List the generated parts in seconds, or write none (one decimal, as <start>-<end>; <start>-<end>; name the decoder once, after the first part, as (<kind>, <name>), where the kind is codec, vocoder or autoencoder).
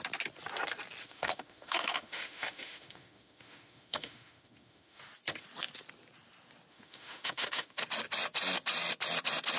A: 1.0-5.0 (autoencoder, DAC-VAE); 6.7-7.8